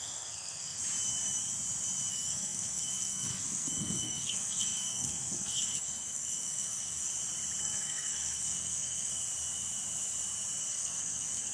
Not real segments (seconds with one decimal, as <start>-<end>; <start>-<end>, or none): 0.0-0.8; 2.1-7.1; 7.6-9.1; 10.7-11.5